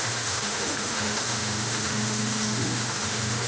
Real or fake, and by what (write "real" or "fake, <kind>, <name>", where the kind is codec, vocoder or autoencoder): fake, autoencoder, DAC-VAE